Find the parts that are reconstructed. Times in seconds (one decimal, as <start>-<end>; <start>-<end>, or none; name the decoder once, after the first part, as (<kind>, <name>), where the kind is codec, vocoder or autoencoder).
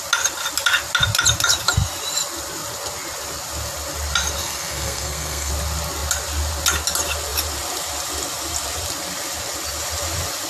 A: 4.4-5.5 (codec, SNAC)